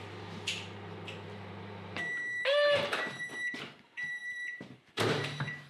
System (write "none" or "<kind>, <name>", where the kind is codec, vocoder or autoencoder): vocoder, BigVGAN v2